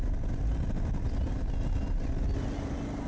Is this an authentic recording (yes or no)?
yes